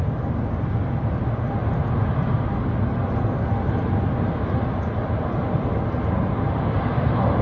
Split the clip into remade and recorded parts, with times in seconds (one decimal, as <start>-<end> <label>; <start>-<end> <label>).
0.0-7.4 recorded